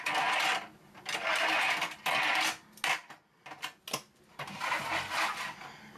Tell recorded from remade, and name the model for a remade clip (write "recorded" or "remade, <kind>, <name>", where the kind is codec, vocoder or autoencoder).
recorded